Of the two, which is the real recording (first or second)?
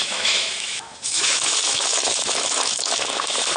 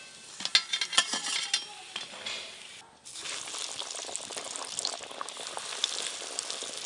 second